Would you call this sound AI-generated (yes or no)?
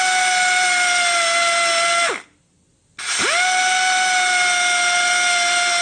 no